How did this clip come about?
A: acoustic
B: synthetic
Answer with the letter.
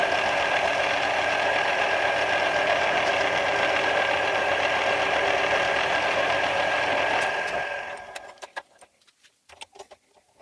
A